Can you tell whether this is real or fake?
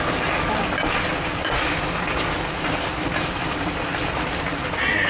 real